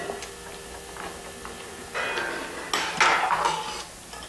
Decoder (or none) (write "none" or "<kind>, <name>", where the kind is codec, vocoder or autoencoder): none